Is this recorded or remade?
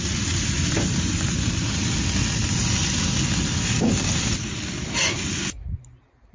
recorded